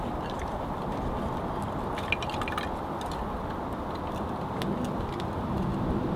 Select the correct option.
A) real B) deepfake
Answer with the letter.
A